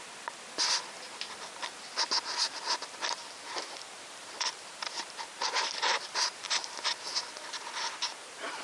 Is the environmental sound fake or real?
real